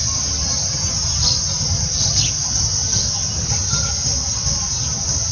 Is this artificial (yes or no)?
no